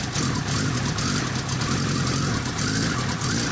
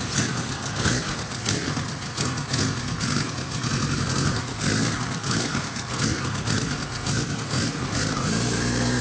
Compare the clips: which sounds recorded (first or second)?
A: first